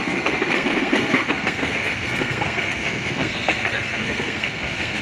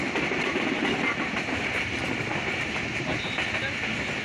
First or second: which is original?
second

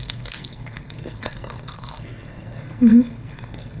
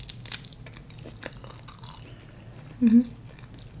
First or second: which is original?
second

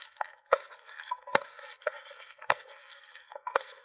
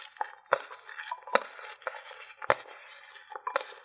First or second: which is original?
second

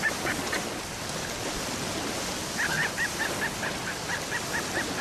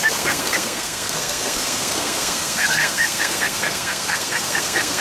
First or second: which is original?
first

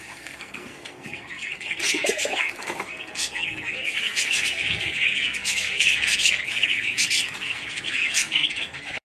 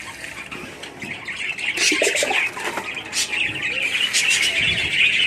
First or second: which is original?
second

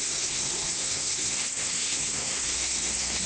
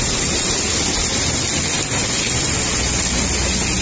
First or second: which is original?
second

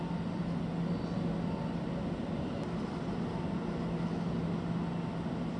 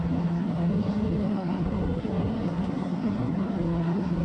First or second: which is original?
first